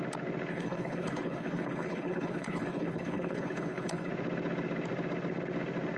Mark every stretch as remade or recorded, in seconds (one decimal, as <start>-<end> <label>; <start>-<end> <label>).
0.0-0.5 recorded; 0.5-4.1 remade; 4.1-6.0 recorded